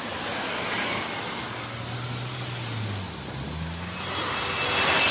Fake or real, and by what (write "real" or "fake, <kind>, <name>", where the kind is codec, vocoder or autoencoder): real